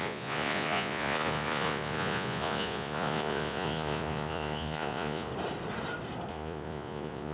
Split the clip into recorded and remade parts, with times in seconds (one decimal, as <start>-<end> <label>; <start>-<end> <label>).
0.0-5.3 remade; 5.3-6.3 recorded; 6.3-7.3 remade